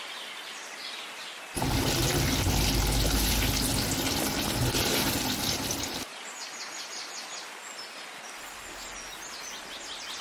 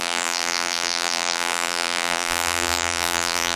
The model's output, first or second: second